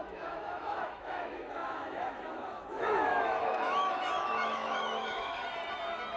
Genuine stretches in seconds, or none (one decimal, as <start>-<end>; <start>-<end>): 5.4-6.2